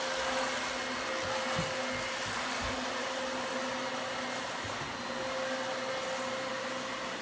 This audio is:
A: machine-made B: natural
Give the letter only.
B